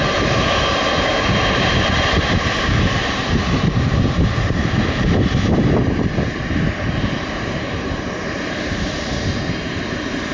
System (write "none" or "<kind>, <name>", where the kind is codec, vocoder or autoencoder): vocoder, BigVGAN v2